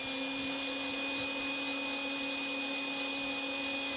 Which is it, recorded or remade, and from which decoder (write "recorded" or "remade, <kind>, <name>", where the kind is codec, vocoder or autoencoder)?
recorded